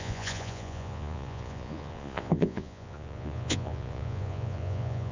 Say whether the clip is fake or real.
fake